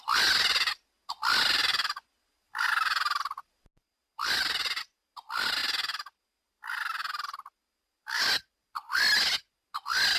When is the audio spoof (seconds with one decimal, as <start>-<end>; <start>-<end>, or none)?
none